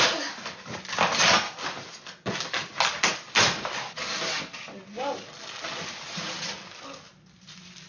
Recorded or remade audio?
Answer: recorded